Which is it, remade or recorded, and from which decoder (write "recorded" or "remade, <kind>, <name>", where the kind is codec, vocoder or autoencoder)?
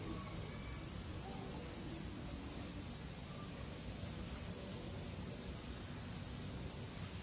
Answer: recorded